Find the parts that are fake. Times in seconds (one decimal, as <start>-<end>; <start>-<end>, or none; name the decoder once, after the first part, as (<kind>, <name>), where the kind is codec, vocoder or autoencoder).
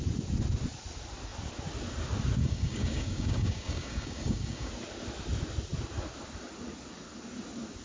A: 2.4-4.7 (codec, DAC)